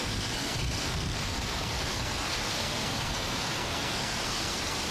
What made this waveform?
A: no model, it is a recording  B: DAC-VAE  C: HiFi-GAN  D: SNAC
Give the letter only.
D